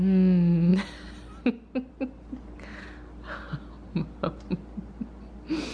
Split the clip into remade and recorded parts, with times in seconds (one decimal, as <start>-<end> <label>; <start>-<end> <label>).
0.0-5.7 recorded